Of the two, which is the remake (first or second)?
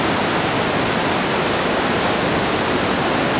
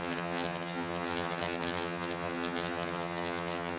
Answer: second